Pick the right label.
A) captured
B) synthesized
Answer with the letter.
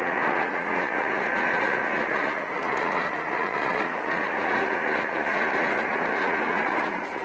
B